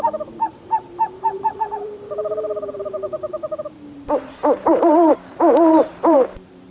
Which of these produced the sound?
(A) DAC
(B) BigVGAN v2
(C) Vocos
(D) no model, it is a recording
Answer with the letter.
B